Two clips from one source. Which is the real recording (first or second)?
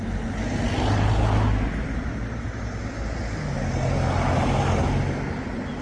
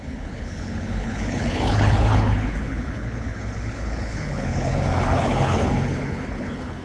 first